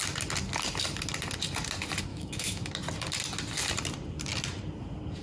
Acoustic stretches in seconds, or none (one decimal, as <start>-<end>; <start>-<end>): 0.0-2.1; 2.7-5.2

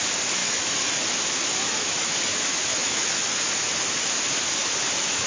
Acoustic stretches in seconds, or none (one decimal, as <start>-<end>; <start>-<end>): 0.0-0.4; 3.4-4.6

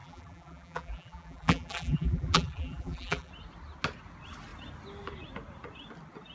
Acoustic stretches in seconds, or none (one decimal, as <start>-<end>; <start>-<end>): 3.3-6.3